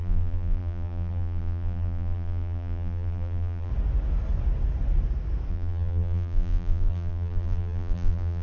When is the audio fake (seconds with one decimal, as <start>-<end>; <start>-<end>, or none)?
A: 0.0-3.7; 5.5-8.4